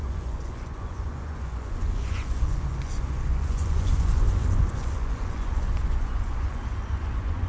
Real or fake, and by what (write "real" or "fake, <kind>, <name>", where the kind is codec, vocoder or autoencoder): fake, vocoder, Vocos